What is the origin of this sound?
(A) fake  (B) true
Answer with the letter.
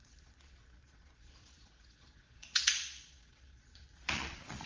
A